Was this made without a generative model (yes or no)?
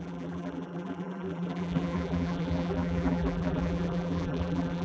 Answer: no